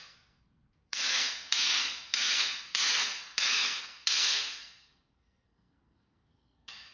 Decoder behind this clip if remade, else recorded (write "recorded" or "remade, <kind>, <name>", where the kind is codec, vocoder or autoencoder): remade, codec, SNAC